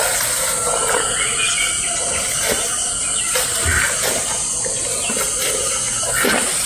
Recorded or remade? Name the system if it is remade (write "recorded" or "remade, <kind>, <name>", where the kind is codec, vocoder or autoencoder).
recorded